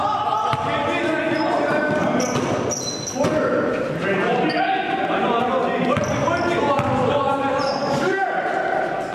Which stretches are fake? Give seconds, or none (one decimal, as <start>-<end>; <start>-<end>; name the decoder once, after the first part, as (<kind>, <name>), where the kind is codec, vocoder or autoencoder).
7.8-8.3 (codec, DAC)